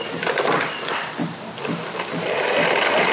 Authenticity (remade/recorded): recorded